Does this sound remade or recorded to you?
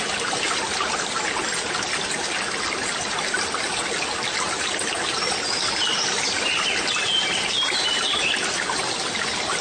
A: recorded